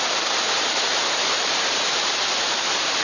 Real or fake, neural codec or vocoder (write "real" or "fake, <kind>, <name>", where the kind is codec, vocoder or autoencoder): fake, vocoder, BigVGAN v2